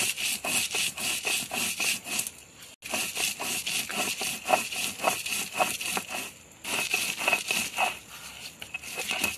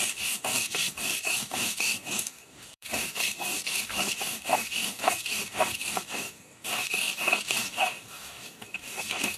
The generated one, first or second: second